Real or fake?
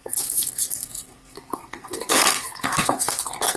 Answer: fake